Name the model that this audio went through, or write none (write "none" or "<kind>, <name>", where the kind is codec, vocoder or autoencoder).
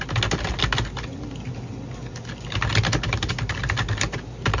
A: none